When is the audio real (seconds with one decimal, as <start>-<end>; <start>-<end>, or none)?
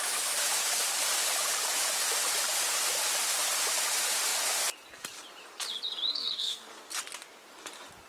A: 0.0-6.1; 6.7-8.1